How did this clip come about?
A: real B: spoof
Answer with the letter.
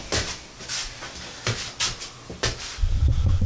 A